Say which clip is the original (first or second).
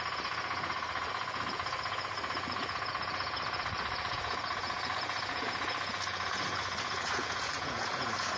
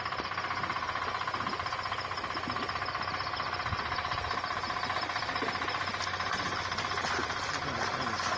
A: second